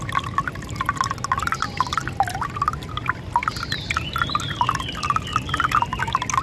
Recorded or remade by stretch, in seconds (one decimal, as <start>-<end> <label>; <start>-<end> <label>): 0.0-6.4 recorded